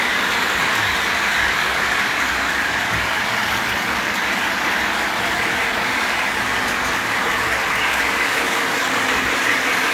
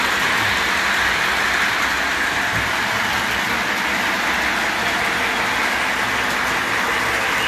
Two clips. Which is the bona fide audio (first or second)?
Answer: second